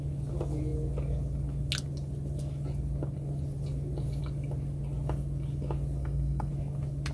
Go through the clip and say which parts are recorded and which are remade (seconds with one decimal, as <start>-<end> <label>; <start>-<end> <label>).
0.0-6.0 recorded; 6.0-6.5 remade; 6.5-7.1 recorded